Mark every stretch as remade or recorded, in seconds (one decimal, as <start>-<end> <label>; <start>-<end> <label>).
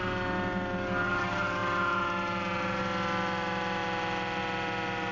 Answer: 0.0-5.1 recorded